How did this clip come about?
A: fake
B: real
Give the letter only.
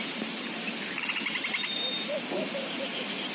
A